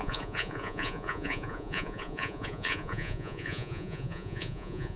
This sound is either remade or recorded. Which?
remade